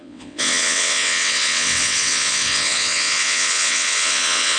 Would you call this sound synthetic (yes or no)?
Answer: yes